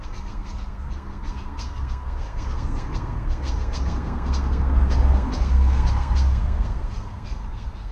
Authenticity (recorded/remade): remade